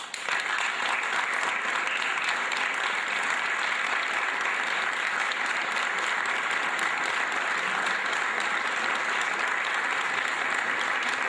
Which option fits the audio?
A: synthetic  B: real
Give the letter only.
A